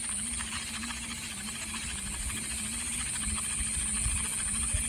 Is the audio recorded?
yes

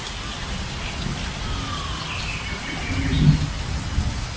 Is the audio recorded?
yes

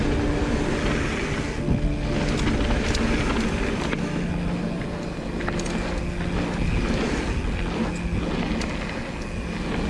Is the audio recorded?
yes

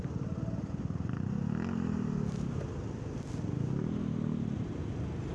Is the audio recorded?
yes